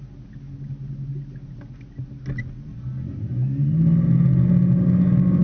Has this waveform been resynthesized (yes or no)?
no